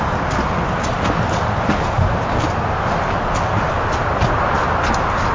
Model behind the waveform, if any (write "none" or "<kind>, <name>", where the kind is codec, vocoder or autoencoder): none